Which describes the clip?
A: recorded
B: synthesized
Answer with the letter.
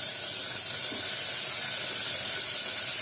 A